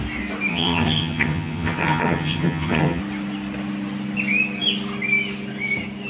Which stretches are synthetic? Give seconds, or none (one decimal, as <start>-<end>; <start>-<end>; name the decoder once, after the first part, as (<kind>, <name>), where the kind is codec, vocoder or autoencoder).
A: 0.5-3.0 (vocoder, HiFi-GAN)